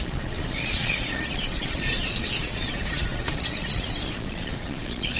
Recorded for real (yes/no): no